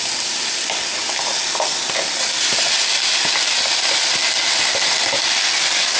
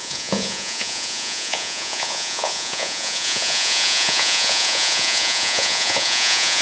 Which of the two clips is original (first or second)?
first